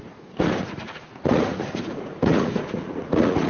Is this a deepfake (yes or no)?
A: yes